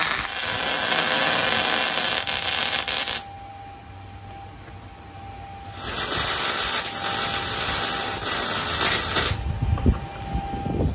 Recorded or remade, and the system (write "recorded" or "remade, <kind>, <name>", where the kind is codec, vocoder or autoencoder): recorded